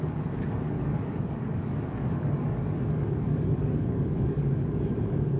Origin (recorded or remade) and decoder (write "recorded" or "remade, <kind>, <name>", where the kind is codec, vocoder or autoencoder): remade, codec, DAC